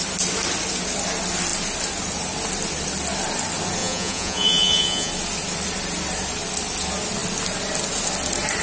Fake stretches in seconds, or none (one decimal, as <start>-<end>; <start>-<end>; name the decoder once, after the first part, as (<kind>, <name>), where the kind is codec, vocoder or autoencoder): 3.8-5.1 (vocoder, Vocos)